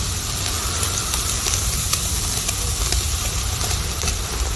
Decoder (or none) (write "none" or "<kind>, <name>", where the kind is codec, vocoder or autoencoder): vocoder, BigVGAN v2